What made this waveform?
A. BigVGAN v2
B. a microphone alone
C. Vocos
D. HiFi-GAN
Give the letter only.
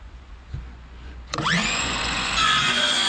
C